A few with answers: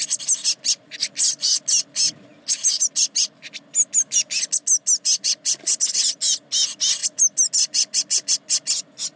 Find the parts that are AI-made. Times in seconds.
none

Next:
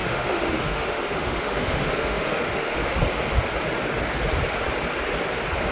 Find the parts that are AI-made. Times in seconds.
0.0-2.9